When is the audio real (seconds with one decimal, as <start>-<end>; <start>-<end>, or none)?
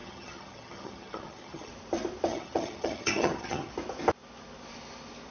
1.7-2.3; 3.7-5.3